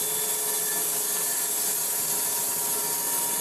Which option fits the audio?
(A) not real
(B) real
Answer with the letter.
B